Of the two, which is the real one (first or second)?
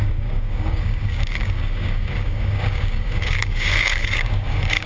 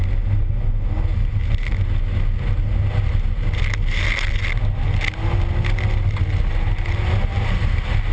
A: second